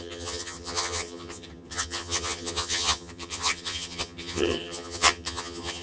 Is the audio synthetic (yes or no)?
yes